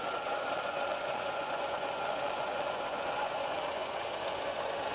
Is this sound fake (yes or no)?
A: yes